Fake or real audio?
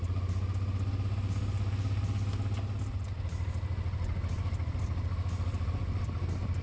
real